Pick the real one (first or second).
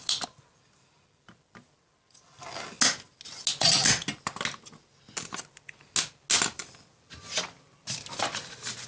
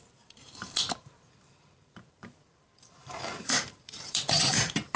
first